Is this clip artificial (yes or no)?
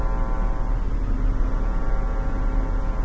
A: no